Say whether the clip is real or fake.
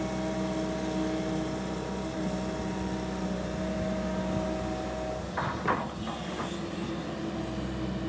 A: real